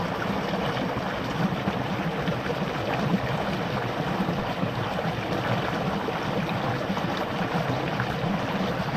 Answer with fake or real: real